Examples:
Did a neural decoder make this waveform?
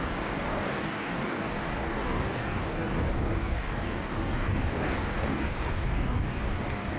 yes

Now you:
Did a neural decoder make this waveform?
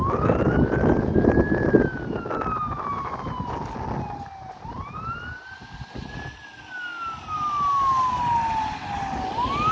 no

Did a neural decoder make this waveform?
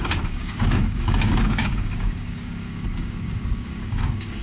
yes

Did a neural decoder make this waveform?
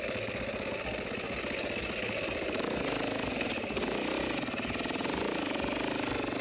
no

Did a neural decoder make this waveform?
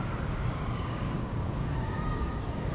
yes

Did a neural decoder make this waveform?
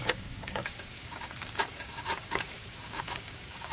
yes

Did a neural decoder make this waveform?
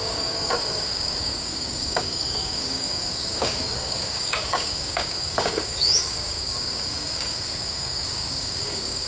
yes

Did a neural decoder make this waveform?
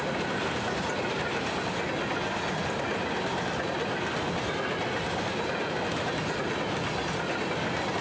no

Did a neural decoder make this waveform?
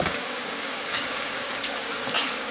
yes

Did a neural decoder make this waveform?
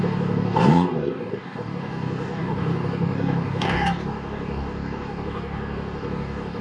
yes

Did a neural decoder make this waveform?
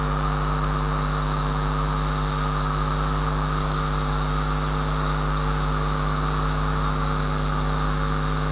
no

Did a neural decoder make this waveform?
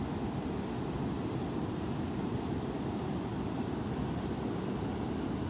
no